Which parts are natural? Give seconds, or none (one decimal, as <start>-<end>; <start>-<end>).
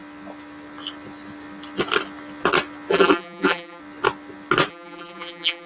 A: 0.0-2.9; 3.8-4.7